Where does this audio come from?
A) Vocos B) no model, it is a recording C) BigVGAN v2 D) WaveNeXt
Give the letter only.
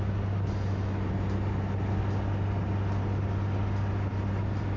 B